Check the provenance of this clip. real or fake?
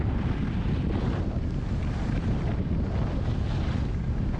real